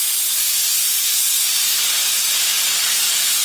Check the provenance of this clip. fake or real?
real